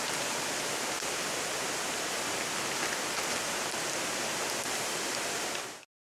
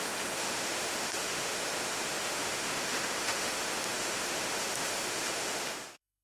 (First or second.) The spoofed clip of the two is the second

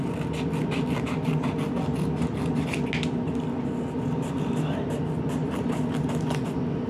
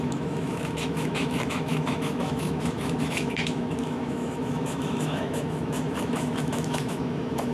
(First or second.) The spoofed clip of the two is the second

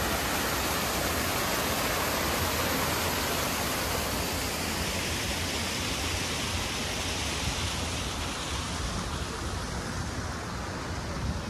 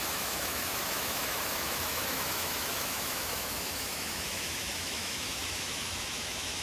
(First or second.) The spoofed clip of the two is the second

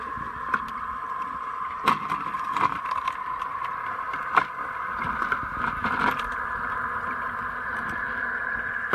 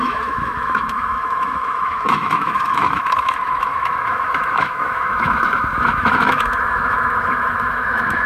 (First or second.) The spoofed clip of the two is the second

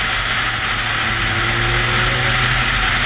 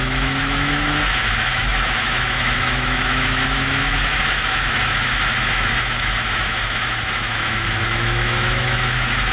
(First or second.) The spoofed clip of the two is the second